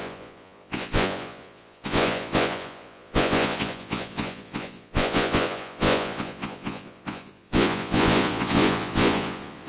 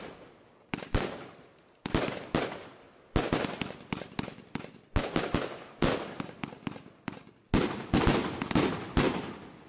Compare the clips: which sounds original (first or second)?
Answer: second